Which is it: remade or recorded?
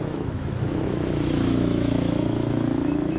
remade